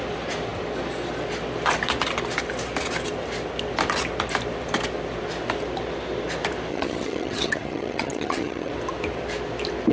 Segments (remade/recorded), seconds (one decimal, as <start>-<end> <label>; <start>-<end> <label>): 0.0-6.7 recorded; 6.7-8.7 remade; 8.7-9.9 recorded